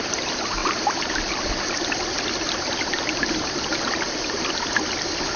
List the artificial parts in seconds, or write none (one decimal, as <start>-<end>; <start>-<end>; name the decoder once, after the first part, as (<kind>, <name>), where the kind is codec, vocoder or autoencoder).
none